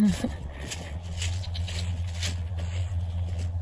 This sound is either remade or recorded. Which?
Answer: remade